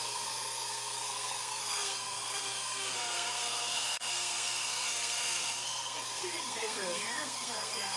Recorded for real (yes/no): no